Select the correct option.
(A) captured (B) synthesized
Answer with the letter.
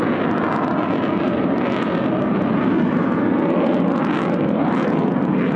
A